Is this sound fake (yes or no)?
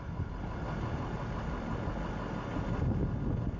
no